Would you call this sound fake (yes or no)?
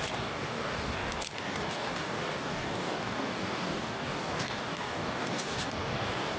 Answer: yes